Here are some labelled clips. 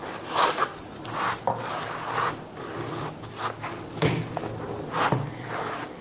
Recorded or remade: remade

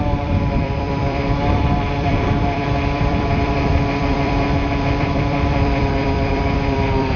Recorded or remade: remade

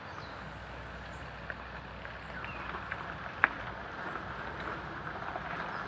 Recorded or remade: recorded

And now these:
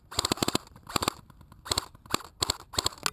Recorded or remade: recorded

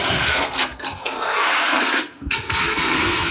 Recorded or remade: remade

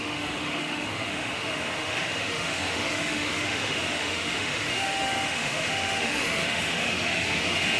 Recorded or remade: remade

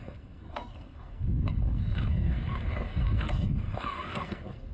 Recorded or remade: remade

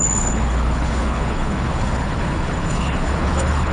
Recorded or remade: remade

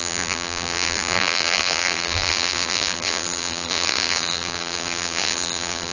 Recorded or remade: remade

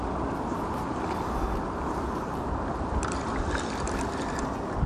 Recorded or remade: recorded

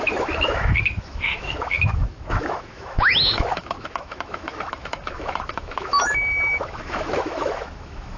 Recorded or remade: remade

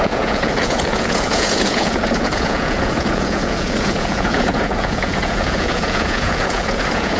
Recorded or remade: remade